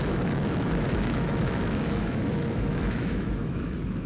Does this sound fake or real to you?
fake